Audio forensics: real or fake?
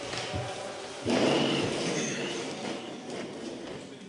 real